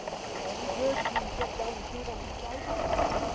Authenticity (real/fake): real